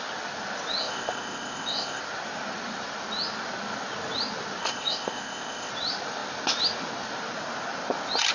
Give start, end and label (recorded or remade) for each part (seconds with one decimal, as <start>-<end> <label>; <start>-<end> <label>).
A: 0.0-0.8 recorded; 0.8-2.0 remade; 2.0-4.6 recorded; 4.6-5.7 remade; 5.7-8.3 recorded